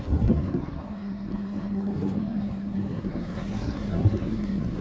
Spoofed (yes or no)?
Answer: yes